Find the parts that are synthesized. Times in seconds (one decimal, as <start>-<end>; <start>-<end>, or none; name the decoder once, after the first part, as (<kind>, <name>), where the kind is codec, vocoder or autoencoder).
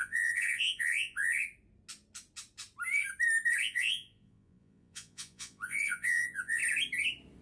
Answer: 0.0-1.4 (vocoder, Vocos); 3.6-6.6